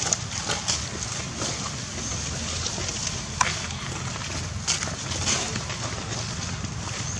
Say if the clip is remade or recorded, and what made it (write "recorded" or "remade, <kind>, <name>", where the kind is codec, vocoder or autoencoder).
recorded